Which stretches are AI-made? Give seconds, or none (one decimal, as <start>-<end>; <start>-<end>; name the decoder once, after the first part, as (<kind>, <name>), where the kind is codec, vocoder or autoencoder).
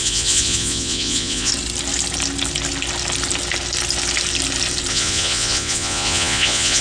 0.0-1.5 (vocoder, Vocos); 4.9-6.8